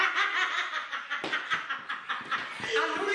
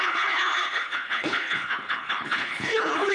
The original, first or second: first